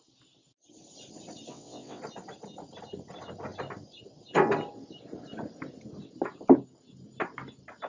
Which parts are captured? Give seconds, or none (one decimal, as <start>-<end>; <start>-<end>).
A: 0.0-1.5; 2.0-7.9